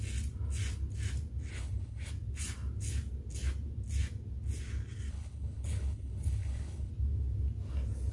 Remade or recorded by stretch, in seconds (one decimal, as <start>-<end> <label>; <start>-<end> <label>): 0.0-1.5 recorded; 1.5-2.1 remade; 2.1-5.1 recorded; 5.1-6.9 remade; 6.9-8.1 recorded